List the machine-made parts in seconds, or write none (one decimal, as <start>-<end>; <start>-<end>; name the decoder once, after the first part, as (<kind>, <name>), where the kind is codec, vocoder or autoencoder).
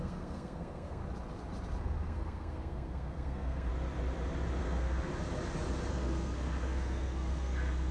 0.0-1.0 (codec, SNAC); 1.8-3.7; 4.6-5.1; 5.9-7.9